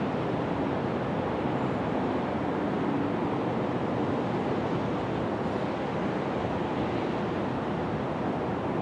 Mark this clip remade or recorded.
recorded